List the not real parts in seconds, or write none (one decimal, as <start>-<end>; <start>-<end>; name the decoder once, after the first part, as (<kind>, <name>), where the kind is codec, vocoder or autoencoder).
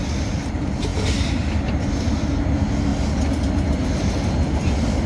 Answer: none